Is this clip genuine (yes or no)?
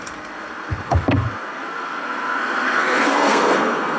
no